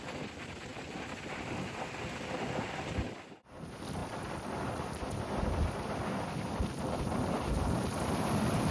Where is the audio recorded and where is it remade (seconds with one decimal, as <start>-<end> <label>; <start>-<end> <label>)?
0.0-8.7 recorded